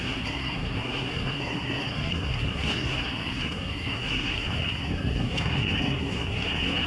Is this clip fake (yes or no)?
yes